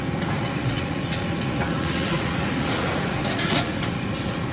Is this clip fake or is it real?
fake